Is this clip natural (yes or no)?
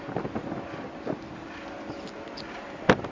yes